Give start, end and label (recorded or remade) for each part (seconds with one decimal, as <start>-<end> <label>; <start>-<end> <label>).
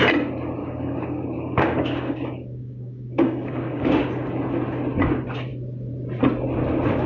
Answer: 0.0-0.6 recorded; 0.6-3.8 remade; 3.8-7.1 recorded